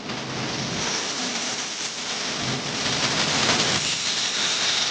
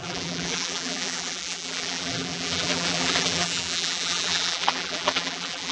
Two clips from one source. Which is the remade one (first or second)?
second